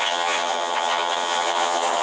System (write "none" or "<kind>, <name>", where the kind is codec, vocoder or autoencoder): vocoder, HiFi-GAN